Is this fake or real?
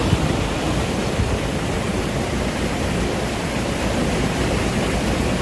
fake